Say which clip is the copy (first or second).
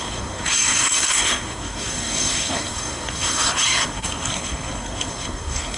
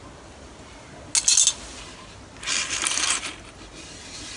first